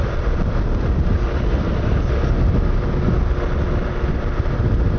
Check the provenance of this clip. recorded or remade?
recorded